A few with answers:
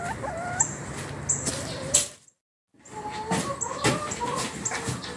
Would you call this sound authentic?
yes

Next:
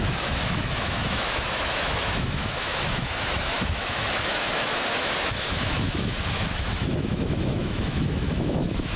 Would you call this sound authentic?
no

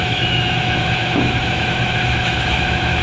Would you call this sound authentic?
no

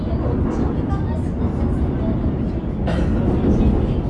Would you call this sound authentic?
yes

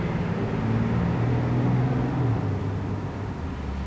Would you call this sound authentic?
yes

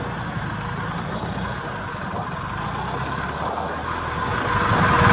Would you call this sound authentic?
yes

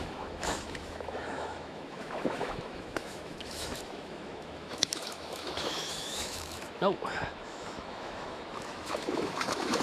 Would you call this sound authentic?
no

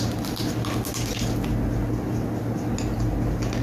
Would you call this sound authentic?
yes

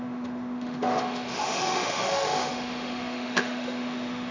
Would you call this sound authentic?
no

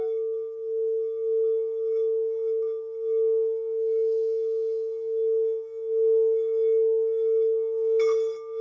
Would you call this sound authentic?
yes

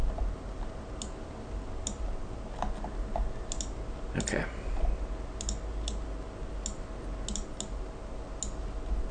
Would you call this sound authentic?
yes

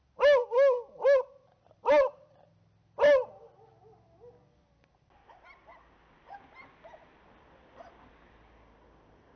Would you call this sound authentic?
yes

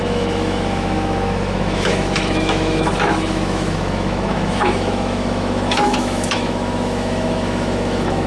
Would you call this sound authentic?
no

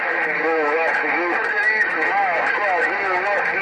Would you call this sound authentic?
no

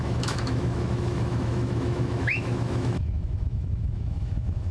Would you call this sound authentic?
no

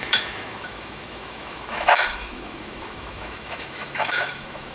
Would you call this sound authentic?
no